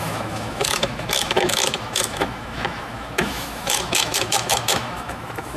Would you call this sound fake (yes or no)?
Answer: yes